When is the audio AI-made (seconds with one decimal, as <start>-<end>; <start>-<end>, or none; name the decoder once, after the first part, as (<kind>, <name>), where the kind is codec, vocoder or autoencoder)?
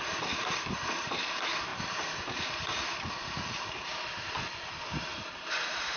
0.0-1.7 (vocoder, BigVGAN v2); 3.1-3.9; 4.8-6.0